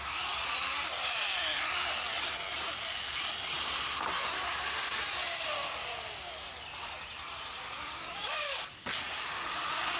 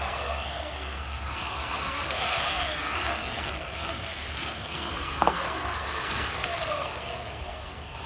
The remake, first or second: second